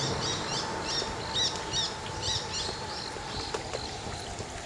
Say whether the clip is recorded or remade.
recorded